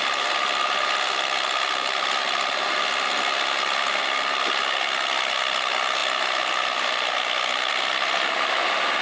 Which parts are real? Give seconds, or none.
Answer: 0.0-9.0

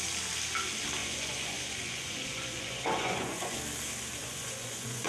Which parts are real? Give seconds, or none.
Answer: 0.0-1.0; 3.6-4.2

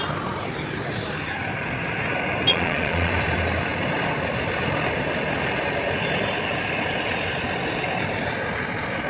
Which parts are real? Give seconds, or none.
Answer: 0.0-2.5; 3.1-9.1